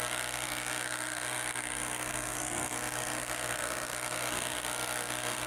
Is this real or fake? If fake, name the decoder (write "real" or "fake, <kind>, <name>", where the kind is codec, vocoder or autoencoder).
fake, codec, SNAC